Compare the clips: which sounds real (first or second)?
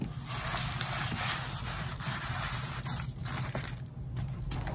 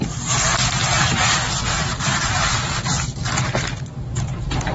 first